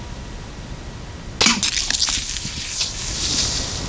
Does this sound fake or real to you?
real